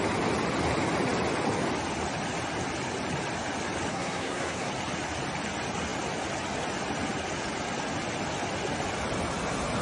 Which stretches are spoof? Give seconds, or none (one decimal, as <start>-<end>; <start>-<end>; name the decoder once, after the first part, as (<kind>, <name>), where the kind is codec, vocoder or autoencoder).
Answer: 3.9-4.7 (codec, SNAC)